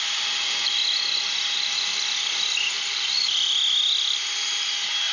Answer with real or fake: real